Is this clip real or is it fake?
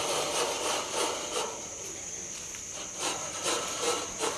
real